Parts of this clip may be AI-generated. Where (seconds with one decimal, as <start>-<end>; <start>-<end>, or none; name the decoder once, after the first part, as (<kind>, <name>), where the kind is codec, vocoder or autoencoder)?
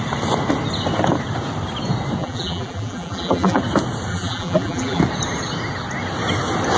2.2-3.6 (vocoder, BigVGAN v2); 4.1-5.0